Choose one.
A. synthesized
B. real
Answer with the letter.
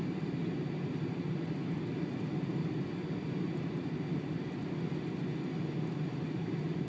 B